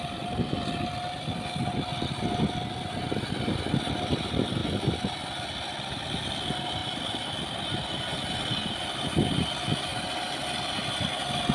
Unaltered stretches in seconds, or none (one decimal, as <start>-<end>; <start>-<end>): 0.0-11.5